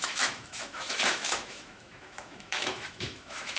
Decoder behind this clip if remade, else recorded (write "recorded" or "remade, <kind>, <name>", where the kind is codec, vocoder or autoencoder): remade, autoencoder, DAC-VAE